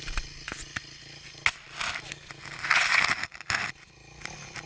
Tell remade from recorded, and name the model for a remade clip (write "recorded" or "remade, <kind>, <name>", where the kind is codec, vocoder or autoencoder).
recorded